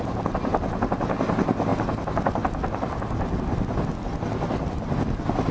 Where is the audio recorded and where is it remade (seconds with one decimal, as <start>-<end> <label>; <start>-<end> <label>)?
0.0-5.5 recorded